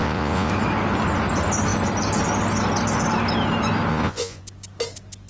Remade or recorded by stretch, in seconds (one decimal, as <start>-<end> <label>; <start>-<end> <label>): 0.0-0.5 remade; 0.5-3.9 recorded; 3.9-4.4 remade; 4.4-5.3 recorded